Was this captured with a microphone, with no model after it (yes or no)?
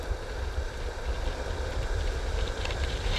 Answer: yes